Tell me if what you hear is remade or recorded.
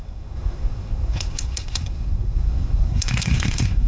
remade